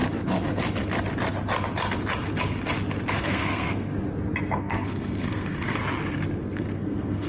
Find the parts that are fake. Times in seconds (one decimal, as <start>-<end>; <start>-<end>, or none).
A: 3.2-3.9; 4.6-5.8; 6.4-7.3